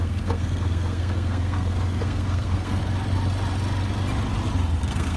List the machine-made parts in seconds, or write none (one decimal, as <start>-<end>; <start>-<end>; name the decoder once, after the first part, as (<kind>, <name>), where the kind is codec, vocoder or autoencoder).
0.0-2.8 (codec, SNAC); 4.8-5.2